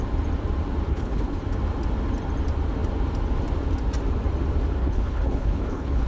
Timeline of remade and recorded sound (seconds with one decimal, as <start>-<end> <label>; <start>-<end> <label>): 0.0-0.9 recorded; 0.9-1.4 remade; 1.4-4.8 recorded; 4.8-6.1 remade